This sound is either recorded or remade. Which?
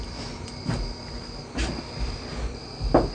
recorded